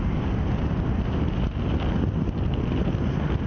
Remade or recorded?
recorded